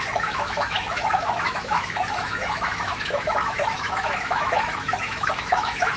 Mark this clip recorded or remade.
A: remade